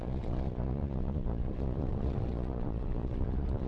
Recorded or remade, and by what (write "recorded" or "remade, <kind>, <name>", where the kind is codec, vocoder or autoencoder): remade, vocoder, Vocos